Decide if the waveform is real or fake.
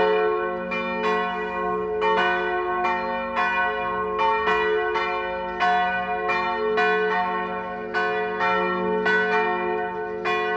real